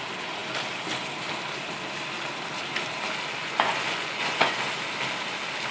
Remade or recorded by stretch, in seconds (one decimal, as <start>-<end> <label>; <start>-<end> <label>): 0.0-3.4 recorded; 3.4-4.6 remade; 4.6-5.7 recorded